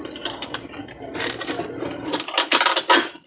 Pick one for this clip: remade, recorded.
remade